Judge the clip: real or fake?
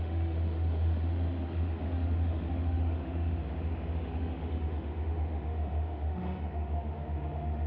fake